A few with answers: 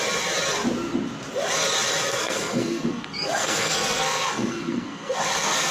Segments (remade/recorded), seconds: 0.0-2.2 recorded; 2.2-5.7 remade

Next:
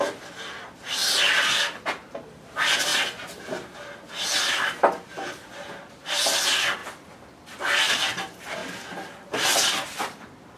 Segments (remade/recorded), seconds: 0.0-1.0 remade; 1.0-1.6 recorded; 1.6-2.9 remade; 2.9-4.5 recorded; 4.5-8.6 remade; 8.6-9.3 recorded; 9.3-10.6 remade

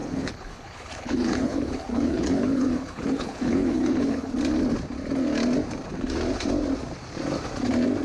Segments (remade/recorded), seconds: 0.0-4.3 remade; 4.3-8.0 recorded

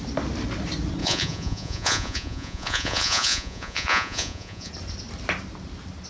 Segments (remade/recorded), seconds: 0.0-1.0 recorded; 1.0-4.7 remade; 4.7-6.1 recorded